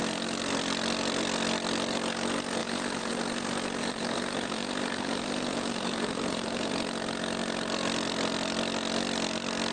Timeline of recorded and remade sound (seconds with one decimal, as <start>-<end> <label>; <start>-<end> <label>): 0.0-2.6 recorded; 2.6-3.1 remade; 3.1-3.8 recorded; 3.8-6.7 remade; 6.7-9.7 recorded